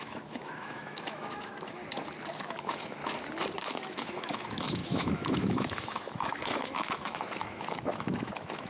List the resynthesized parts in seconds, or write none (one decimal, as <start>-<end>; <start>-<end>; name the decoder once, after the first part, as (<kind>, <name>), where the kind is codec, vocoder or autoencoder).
0.0-1.8 (autoencoder, DAC-VAE); 2.3-3.0; 3.6-8.7

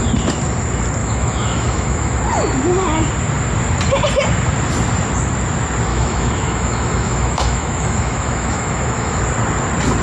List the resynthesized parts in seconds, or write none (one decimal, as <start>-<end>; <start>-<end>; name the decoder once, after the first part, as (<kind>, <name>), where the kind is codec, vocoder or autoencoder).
1.0-2.2 (autoencoder, DAC-VAE); 5.9-9.2